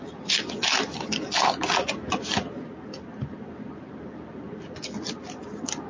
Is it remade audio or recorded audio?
recorded